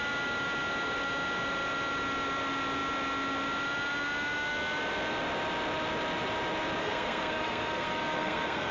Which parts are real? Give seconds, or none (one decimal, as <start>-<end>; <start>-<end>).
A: 0.0-6.8